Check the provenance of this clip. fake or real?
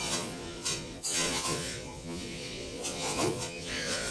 fake